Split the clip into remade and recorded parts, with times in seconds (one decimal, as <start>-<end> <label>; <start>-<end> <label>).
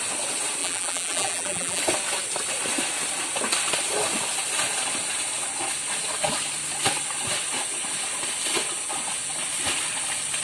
0.0-0.6 recorded; 0.6-1.8 remade; 1.8-10.4 recorded